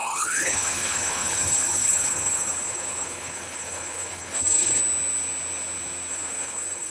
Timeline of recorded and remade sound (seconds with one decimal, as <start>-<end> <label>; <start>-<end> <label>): 0.0-4.8 remade; 4.8-6.1 recorded; 6.1-6.9 remade